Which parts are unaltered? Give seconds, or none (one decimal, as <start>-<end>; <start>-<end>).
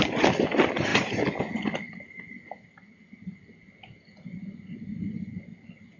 0.0-6.0